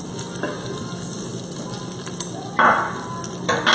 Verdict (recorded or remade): recorded